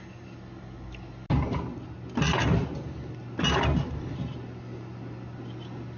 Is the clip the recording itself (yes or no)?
yes